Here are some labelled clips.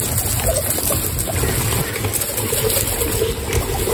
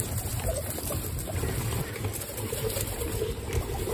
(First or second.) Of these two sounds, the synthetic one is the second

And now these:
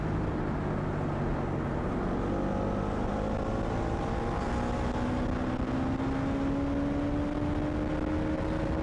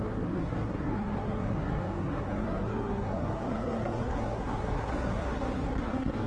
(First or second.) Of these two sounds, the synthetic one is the second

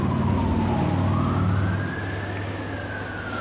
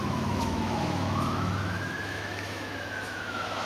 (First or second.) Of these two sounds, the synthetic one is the second